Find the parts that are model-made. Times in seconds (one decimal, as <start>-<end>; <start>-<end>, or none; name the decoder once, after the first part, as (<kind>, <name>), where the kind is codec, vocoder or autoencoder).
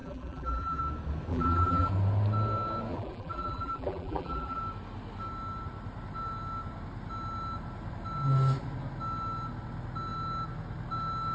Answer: 0.0-0.8 (vocoder, BigVGAN v2); 1.3-1.9; 2.9-4.6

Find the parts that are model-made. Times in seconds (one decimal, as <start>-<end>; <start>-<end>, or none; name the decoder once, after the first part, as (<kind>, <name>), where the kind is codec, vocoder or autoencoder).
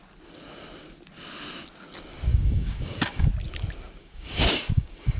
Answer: 2.3-3.3 (codec, DAC); 4.0-5.2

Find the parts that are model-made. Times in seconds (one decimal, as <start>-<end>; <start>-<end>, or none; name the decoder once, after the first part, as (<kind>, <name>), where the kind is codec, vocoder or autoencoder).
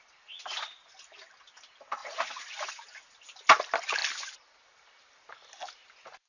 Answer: none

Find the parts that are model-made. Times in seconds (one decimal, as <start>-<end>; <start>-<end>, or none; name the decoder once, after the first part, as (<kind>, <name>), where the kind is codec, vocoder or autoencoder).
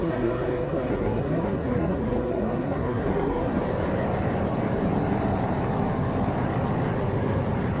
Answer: 0.0-3.6 (codec, SNAC)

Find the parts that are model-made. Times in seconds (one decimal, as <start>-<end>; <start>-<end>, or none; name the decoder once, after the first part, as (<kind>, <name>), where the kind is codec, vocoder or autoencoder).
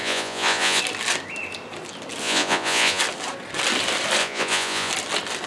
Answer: 0.0-0.8 (vocoder, Vocos); 2.2-3.0; 4.2-4.9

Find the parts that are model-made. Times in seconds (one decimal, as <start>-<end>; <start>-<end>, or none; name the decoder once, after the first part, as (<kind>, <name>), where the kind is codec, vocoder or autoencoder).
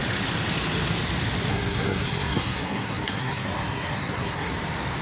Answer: 1.5-4.5 (codec, SNAC)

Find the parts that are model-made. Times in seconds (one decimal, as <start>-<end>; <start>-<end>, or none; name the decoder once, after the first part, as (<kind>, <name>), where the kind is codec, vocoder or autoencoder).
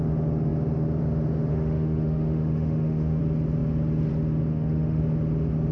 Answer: 1.5-3.2 (autoencoder, DAC-VAE); 4.5-5.0